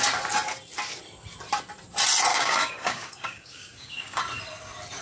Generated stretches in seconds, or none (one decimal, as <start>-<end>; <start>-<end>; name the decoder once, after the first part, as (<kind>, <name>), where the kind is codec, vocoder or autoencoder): 2.3-4.2 (codec, DAC)